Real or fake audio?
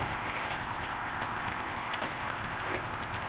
fake